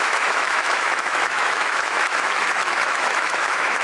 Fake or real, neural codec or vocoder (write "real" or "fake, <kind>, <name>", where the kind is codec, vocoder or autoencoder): fake, autoencoder, DAC-VAE